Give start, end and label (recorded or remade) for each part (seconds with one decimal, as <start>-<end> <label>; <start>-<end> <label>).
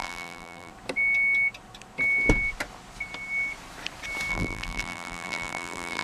0.0-0.7 remade; 0.7-4.3 recorded; 4.3-6.0 remade